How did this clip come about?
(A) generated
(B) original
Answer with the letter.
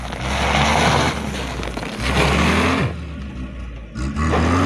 B